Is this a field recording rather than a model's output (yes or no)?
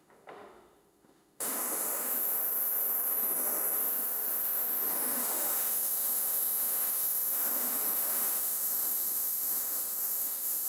no